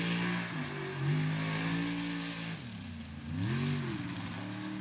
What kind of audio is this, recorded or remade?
recorded